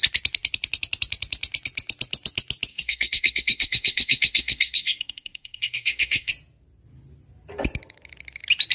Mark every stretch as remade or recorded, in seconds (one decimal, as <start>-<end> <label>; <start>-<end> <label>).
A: 0.0-2.7 recorded; 2.7-6.3 remade; 6.3-8.7 recorded